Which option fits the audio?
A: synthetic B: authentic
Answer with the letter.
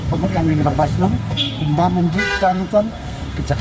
A